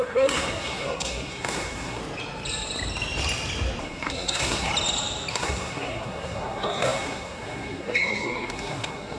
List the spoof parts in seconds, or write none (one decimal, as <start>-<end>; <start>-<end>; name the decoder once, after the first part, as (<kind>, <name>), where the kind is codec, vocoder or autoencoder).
0.0-2.0 (codec, SNAC); 3.8-4.7; 5.3-9.2